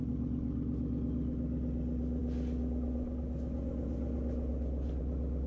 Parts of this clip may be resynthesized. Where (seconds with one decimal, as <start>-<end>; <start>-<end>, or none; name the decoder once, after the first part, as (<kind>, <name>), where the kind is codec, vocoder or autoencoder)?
none

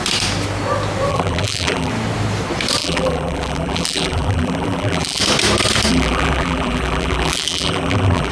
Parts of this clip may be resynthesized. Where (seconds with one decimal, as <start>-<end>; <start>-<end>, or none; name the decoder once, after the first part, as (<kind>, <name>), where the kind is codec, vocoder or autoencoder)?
1.1-1.9 (vocoder, BigVGAN v2); 2.8-5.2; 5.9-8.3